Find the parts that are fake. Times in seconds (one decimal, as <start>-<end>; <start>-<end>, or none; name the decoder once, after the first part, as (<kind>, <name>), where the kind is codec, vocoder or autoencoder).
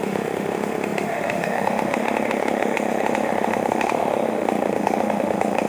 0.0-5.7 (autoencoder, DAC-VAE)